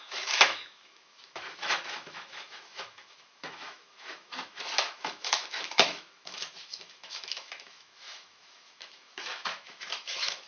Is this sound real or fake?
fake